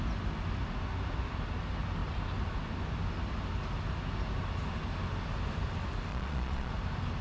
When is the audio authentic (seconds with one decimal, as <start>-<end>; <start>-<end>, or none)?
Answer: 0.0-6.1; 6.7-7.2